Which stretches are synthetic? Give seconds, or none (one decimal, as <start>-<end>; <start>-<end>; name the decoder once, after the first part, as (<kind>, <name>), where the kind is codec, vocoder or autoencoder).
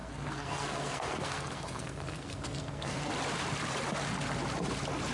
0.0-3.1 (codec, SNAC)